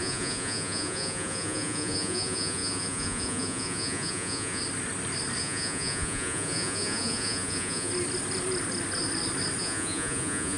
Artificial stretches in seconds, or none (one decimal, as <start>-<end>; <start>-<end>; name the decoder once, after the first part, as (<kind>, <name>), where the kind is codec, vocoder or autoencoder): 0.0-4.6 (vocoder, Vocos); 5.4-7.9; 9.6-10.6